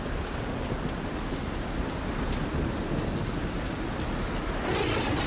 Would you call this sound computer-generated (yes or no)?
no